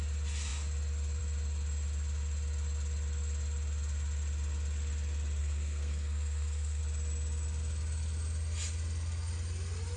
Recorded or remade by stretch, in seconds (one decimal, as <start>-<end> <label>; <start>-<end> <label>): 0.0-5.4 recorded; 5.4-6.8 remade; 6.8-10.0 recorded